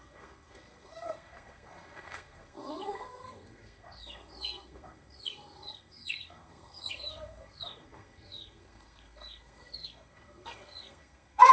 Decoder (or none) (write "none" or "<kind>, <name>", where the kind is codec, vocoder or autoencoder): codec, SNAC